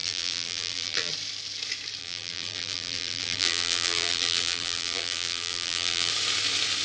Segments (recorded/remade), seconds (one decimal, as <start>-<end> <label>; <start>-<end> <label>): 0.0-1.1 remade; 1.1-2.0 recorded; 2.0-6.1 remade; 6.1-6.8 recorded